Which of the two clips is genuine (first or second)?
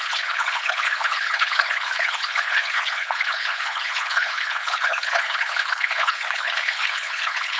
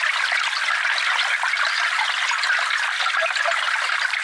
second